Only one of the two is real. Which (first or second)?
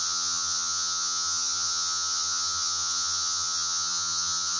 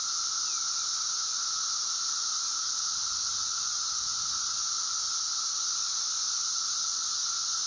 second